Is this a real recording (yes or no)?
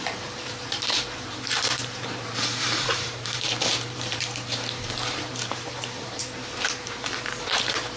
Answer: no